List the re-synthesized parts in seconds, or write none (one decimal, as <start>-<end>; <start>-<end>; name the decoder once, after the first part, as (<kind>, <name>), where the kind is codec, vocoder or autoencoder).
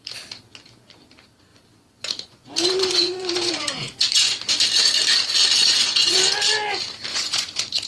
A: 1.5-4.5 (vocoder, Vocos); 5.6-6.2; 7.1-7.9